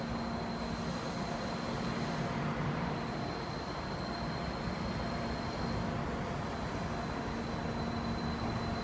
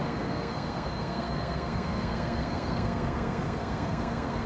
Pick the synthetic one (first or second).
second